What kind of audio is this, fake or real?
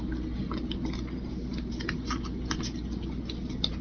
real